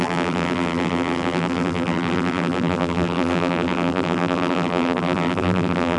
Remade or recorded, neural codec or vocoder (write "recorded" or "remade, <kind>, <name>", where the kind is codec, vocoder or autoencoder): remade, vocoder, BigVGAN v2